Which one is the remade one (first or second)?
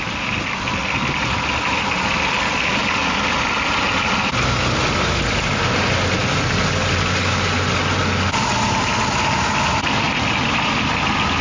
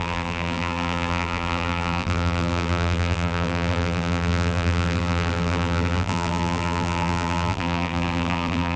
second